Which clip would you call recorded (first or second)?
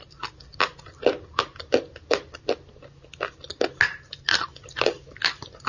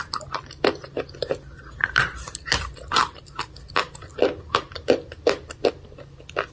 first